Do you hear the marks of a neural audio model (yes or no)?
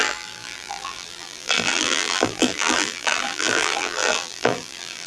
yes